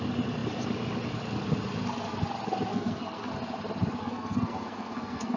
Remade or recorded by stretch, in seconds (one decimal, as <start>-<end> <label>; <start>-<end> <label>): 0.0-2.7 recorded; 2.7-3.3 remade; 3.3-4.0 recorded; 4.0-5.4 remade